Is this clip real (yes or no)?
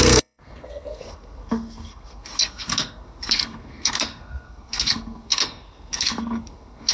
no